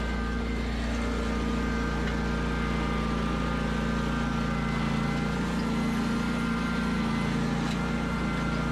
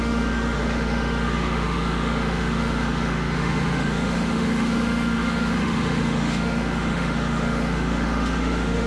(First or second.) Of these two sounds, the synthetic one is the second